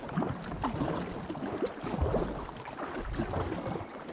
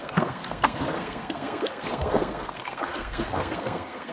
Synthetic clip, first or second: second